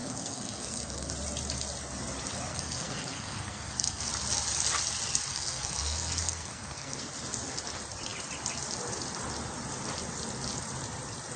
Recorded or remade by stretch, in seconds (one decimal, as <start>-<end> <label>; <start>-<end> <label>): 0.0-1.1 remade; 1.1-2.5 recorded; 2.5-4.1 remade; 4.1-5.3 recorded; 5.3-7.1 remade; 7.1-11.4 recorded